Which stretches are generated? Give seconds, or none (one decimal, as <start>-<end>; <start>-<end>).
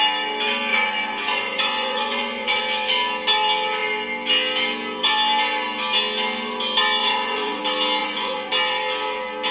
0.7-2.6; 7.0-7.6; 8.0-8.5